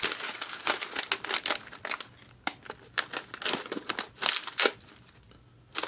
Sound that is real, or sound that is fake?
real